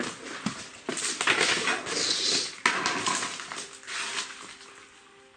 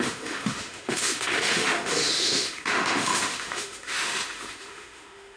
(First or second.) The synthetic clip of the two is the second